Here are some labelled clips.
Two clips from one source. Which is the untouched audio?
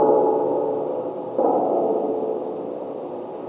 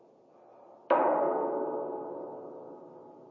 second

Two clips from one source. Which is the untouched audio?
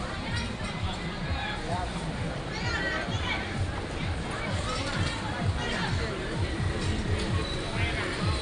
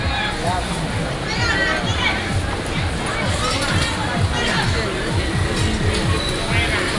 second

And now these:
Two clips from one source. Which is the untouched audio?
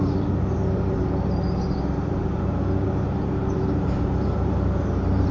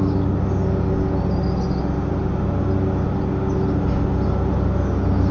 second